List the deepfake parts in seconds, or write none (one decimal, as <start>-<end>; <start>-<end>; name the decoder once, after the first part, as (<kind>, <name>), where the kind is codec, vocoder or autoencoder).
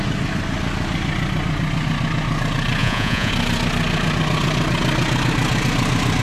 2.8-3.3 (vocoder, Vocos)